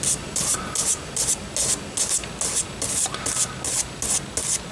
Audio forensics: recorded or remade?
recorded